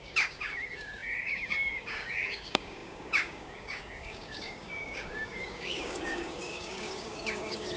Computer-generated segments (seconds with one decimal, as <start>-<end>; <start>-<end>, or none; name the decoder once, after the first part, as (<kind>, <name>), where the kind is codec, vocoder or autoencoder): 0.0-7.8 (codec, DAC)